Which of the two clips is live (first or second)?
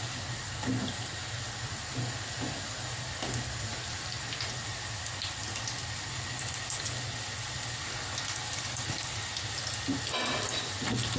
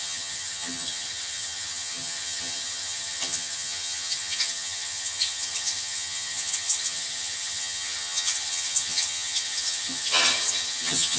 first